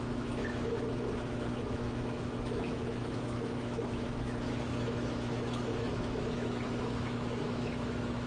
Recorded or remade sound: remade